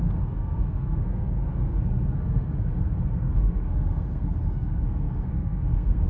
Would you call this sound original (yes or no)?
no